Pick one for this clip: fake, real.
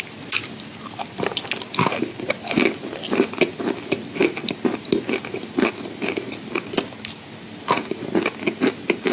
real